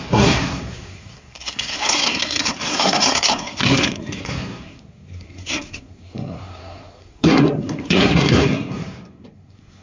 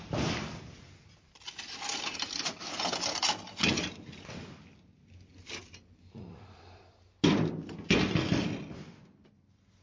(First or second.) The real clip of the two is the second